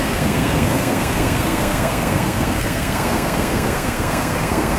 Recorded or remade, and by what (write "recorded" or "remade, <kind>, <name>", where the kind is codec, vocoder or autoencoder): remade, codec, SNAC